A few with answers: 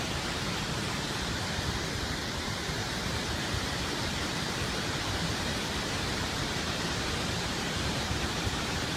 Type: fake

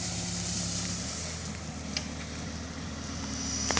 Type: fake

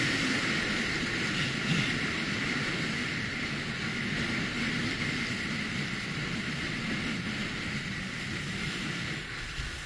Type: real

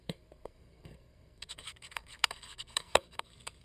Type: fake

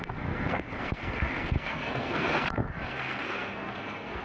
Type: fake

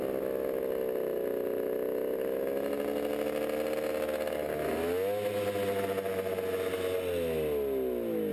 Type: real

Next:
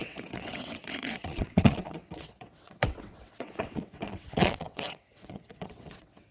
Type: fake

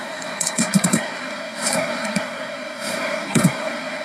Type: fake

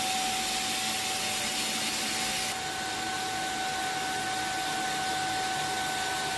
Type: real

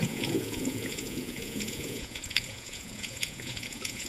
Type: fake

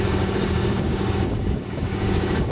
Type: fake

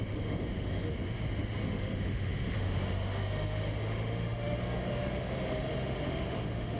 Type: fake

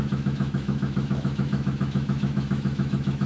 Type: fake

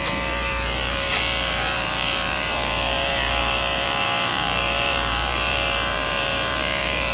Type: fake